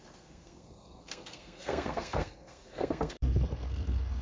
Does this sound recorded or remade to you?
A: remade